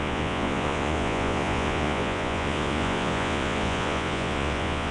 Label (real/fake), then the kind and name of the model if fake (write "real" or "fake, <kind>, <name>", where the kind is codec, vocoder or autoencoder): fake, vocoder, Vocos